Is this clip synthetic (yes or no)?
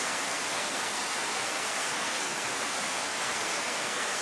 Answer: yes